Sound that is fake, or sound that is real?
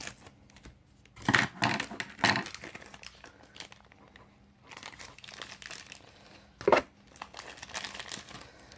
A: real